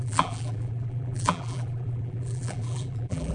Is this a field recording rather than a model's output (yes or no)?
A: no